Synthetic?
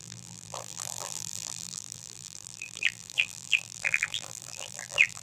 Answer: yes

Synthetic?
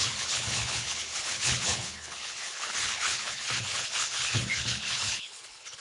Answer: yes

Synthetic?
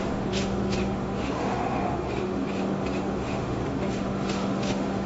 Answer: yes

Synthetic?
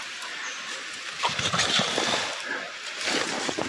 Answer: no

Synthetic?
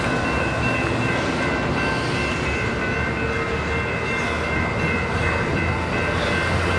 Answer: no